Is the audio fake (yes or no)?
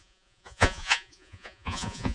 yes